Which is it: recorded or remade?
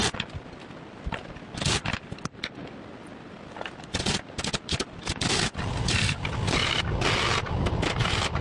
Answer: recorded